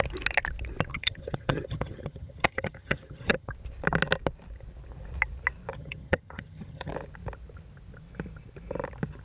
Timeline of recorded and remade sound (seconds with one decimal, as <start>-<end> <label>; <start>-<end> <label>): 0.0-0.9 recorded; 0.9-3.5 remade; 3.5-5.7 recorded; 5.7-6.9 remade; 6.9-9.2 recorded